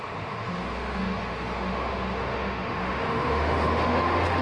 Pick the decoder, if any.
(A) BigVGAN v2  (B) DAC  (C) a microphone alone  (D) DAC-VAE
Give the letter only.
D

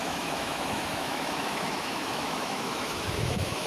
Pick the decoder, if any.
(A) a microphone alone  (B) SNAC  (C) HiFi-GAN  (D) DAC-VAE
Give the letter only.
D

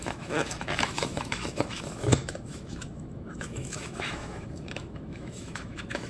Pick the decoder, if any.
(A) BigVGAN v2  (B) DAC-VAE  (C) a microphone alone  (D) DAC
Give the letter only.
B